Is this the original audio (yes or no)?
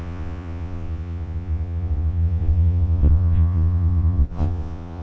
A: no